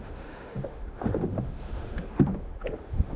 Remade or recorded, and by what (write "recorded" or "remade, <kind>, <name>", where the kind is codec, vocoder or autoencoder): remade, autoencoder, DAC-VAE